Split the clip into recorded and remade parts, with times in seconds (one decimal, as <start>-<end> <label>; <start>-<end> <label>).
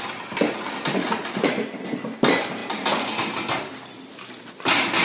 0.0-1.0 recorded; 1.0-1.7 remade; 1.7-5.0 recorded